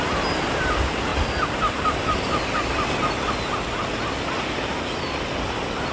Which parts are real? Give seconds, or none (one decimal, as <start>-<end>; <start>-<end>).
0.0-5.9